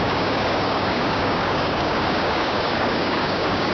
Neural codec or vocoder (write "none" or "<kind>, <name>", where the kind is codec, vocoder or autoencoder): codec, DAC